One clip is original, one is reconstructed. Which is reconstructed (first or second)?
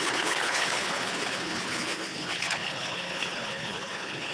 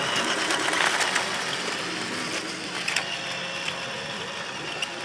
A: first